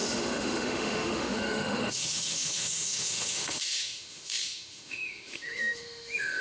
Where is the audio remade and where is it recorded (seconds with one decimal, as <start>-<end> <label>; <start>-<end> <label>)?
0.0-6.4 remade